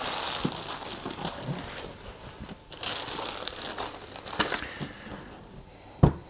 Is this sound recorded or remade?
recorded